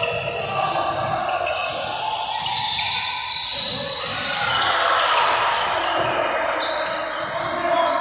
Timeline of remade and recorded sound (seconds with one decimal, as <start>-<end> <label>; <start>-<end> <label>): 0.0-8.0 recorded